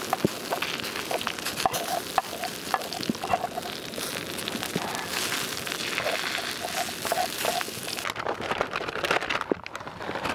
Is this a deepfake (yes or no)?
no